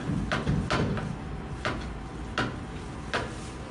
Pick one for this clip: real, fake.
real